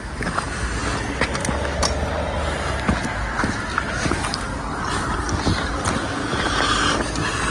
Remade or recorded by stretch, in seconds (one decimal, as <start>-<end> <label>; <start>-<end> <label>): 0.0-7.5 recorded